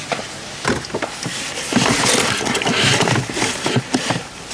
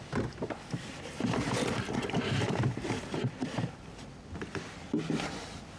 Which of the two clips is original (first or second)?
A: first